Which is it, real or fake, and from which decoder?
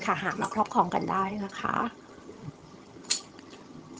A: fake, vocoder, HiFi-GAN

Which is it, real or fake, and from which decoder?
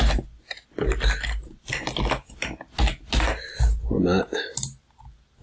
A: real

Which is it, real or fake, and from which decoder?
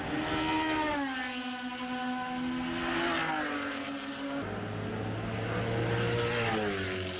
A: real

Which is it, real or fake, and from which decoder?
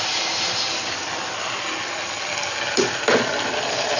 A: real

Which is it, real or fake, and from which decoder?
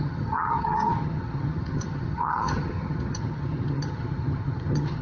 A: fake, vocoder, HiFi-GAN